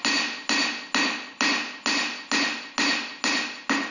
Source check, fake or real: real